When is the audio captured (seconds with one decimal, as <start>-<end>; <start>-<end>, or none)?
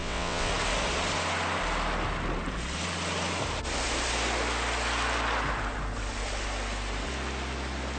0.5-8.0